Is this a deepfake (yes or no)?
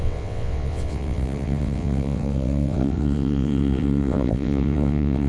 yes